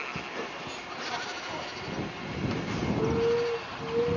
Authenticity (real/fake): real